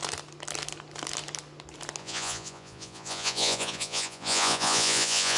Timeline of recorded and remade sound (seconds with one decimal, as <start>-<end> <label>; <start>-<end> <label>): 0.0-2.0 recorded; 2.0-5.4 remade